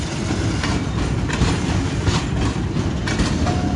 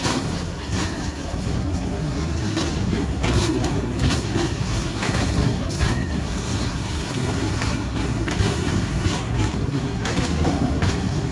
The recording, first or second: first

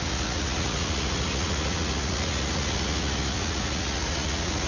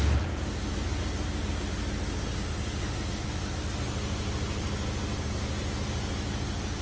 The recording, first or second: second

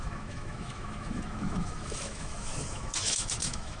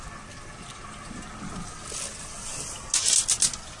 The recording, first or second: second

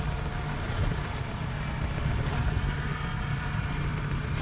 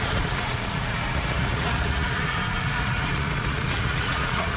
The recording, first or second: first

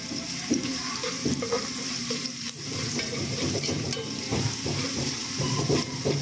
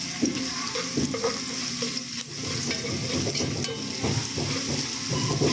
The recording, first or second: second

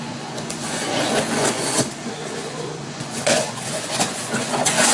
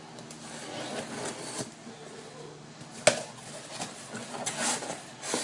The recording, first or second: second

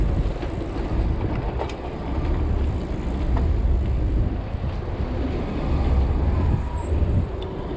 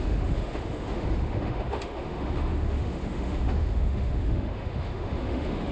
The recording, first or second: first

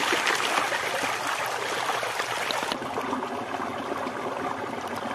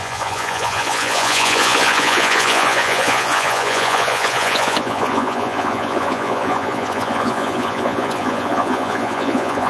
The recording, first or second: first